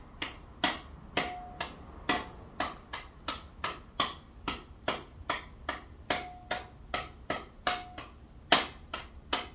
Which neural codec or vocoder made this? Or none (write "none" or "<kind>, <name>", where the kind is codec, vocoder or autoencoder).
none